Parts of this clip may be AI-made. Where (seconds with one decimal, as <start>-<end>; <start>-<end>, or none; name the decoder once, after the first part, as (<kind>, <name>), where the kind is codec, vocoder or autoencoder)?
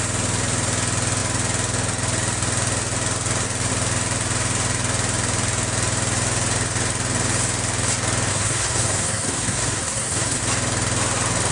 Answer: 8.3-10.4 (codec, SNAC)